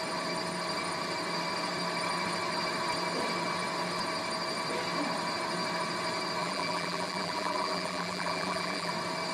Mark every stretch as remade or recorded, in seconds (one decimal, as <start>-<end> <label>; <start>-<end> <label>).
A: 0.0-6.4 recorded; 6.4-8.9 remade; 8.9-9.3 recorded